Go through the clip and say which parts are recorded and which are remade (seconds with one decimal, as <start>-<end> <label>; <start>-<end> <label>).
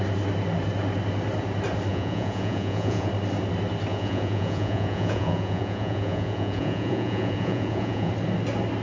0.0-1.9 recorded; 1.9-3.1 remade; 3.1-3.9 recorded; 3.9-8.1 remade; 8.1-8.8 recorded